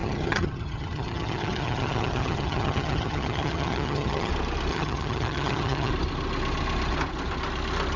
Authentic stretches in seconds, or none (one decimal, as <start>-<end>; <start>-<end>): 4.3-4.7; 5.9-8.0